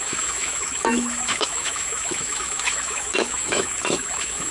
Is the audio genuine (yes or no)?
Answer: no